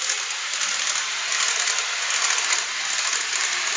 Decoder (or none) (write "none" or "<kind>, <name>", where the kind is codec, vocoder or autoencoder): none